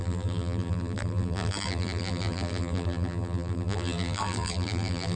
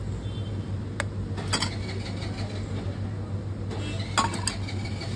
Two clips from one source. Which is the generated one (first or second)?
first